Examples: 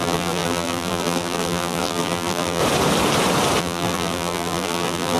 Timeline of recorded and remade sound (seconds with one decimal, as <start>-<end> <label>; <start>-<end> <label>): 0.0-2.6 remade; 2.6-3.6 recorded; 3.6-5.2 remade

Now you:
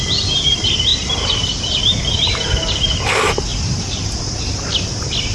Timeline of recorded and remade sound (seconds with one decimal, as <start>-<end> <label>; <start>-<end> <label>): 0.0-0.9 recorded; 0.9-3.0 remade; 3.0-3.5 recorded; 3.5-4.2 remade; 4.2-5.3 recorded

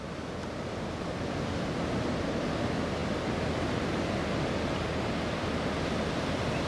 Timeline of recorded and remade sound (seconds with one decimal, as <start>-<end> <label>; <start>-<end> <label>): 0.0-6.7 recorded